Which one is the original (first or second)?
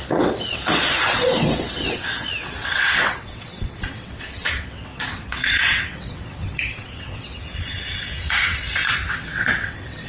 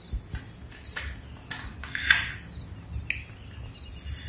second